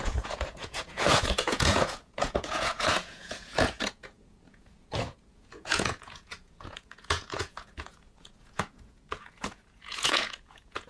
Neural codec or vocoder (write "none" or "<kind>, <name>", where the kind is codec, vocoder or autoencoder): vocoder, Vocos